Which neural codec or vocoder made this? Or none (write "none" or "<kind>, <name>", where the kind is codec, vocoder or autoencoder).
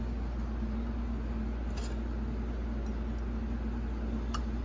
none